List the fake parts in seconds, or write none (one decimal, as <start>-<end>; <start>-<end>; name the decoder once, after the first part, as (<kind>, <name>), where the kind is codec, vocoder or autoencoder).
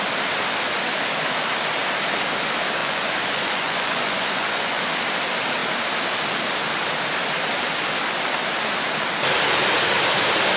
2.8-4.8 (vocoder, Vocos)